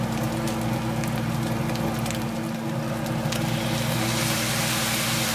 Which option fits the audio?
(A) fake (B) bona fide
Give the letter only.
B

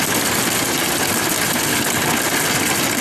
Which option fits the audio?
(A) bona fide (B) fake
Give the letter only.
A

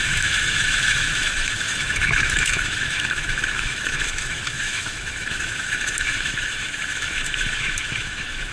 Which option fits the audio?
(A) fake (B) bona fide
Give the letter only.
A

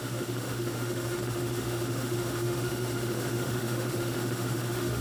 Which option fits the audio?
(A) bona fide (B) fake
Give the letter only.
B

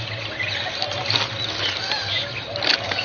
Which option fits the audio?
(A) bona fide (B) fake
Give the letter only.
A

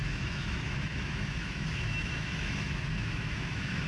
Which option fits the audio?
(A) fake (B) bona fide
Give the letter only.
A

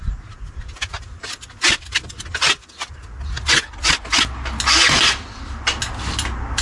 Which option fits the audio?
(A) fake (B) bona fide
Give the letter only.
B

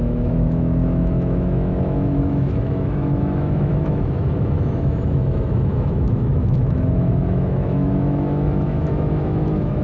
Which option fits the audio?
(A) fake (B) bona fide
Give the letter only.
A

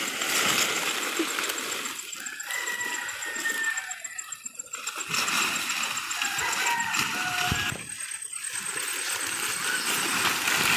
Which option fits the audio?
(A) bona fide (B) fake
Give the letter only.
A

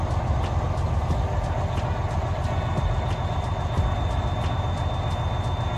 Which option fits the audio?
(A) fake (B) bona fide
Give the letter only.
B